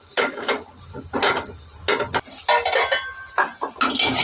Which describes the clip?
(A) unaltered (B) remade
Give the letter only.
A